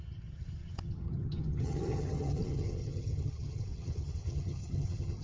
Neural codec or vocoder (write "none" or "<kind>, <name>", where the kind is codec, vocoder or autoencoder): vocoder, HiFi-GAN